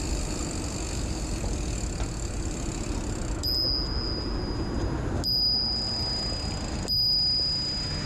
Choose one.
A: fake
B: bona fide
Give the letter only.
B